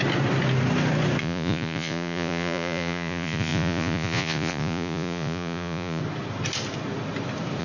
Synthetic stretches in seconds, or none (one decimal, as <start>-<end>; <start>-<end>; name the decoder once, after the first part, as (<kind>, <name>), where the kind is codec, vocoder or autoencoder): 1.2-6.0 (vocoder, Vocos)